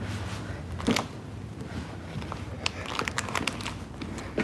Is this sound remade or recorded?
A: recorded